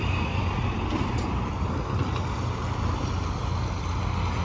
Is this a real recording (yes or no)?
yes